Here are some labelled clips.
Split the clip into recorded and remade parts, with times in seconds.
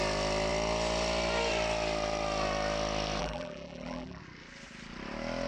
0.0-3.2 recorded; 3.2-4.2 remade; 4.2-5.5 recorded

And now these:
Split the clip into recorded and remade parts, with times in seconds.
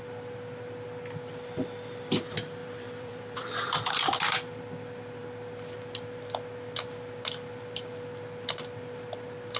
0.0-2.6 recorded; 2.6-3.9 remade; 3.9-9.6 recorded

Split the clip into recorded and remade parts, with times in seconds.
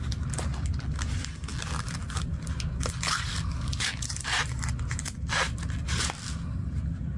0.0-7.2 recorded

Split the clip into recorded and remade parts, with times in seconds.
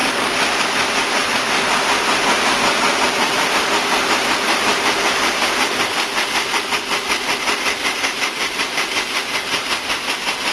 0.0-10.5 recorded